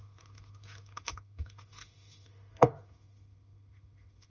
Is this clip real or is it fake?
fake